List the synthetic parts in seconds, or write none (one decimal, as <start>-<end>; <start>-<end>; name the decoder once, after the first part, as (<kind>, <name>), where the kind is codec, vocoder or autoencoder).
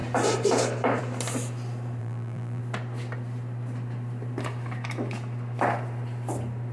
2.0-2.6 (vocoder, BigVGAN v2)